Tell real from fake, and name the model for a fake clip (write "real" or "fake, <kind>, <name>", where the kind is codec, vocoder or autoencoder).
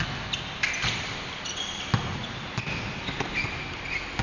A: real